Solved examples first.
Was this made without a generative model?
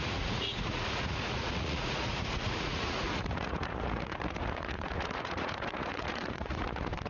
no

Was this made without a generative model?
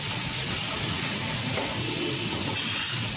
no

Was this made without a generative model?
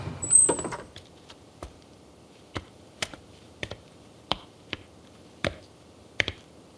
no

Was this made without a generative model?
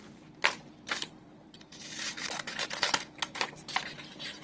no